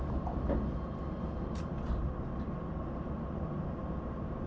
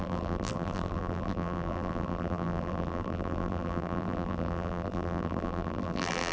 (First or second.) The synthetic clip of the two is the second